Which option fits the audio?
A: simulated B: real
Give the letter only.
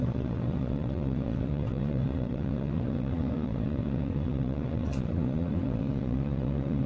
A